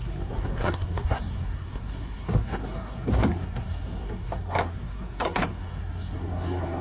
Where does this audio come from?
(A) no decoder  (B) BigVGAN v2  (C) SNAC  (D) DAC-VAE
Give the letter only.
C